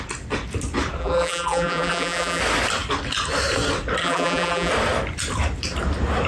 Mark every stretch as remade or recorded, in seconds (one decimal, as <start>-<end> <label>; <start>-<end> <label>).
0.0-1.0 recorded; 1.0-2.4 remade; 2.4-4.0 recorded; 4.0-4.7 remade; 4.7-6.3 recorded